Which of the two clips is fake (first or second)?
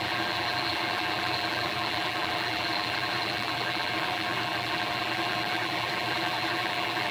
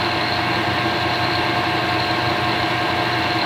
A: first